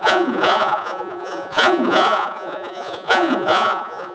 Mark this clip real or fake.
fake